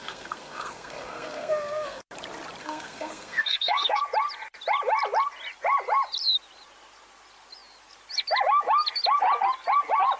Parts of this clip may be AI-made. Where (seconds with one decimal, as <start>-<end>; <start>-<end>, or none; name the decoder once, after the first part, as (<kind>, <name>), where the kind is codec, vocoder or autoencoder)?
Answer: 0.0-2.0 (codec, SNAC); 2.6-4.0